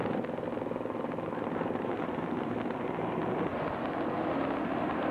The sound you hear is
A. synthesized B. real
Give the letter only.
B